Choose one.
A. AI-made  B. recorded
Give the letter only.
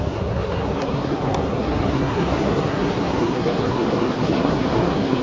A